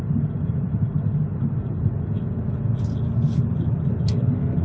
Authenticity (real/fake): real